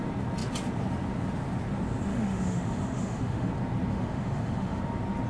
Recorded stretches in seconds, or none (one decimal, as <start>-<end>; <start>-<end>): 0.0-2.1; 3.5-3.9; 4.8-5.3